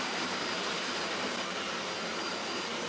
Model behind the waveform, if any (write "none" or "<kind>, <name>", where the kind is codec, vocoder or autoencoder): vocoder, BigVGAN v2